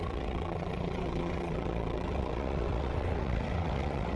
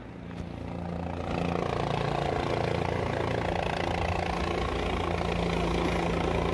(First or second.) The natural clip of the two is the second